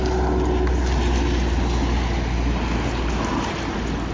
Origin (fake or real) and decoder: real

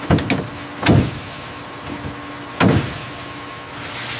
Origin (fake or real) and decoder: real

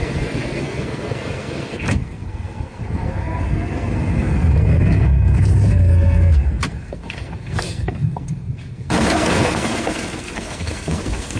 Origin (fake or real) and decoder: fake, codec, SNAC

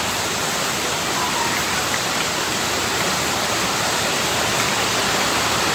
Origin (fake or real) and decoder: real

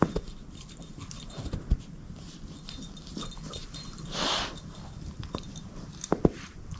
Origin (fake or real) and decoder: real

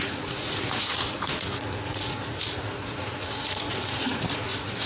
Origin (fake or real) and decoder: fake, vocoder, Vocos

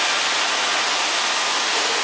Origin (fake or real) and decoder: real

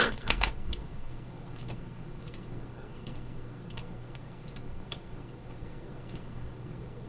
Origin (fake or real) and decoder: fake, codec, SNAC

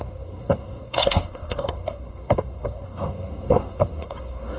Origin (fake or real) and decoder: fake, codec, SNAC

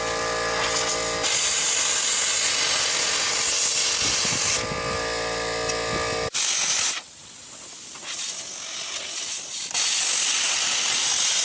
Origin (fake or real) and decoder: real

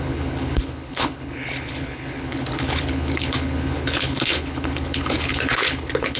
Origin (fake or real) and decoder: fake, codec, HILCodec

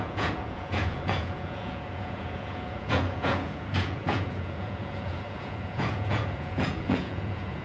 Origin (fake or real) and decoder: fake, vocoder, Vocos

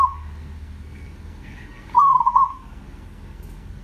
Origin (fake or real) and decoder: fake, codec, SNAC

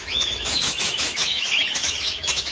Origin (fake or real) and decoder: fake, autoencoder, DAC-VAE